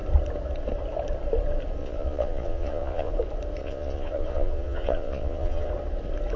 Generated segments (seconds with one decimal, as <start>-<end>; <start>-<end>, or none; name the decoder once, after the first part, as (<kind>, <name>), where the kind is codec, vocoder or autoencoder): 1.8-3.1 (vocoder, Vocos); 3.6-5.7